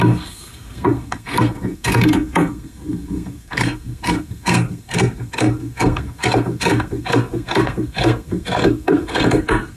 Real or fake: fake